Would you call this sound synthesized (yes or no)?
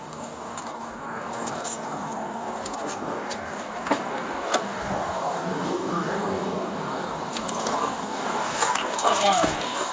yes